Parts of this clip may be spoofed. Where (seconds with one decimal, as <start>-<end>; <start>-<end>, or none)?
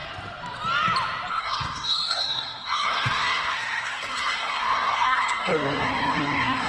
1.3-6.7